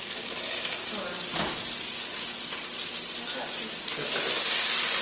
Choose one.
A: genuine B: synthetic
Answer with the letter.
A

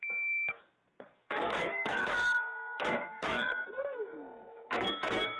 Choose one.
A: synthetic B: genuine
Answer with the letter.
A